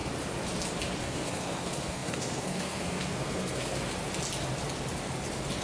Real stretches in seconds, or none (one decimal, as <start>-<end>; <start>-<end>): 0.0-1.0; 3.9-5.6